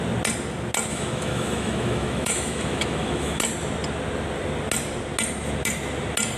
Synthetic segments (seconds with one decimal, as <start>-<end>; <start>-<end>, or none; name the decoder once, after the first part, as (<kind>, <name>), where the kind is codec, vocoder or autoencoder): 0.9-3.4 (autoencoder, DAC-VAE)